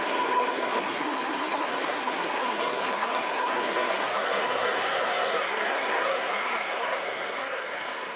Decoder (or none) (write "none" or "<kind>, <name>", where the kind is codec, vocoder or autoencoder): codec, SNAC